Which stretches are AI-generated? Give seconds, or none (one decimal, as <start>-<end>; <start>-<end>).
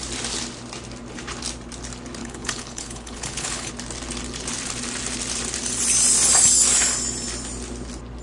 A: 2.2-3.7